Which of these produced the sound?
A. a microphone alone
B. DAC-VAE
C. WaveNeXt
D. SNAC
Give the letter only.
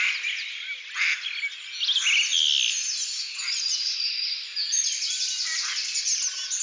A